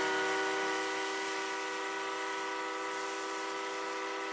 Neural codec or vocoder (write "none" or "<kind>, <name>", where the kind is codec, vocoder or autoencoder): none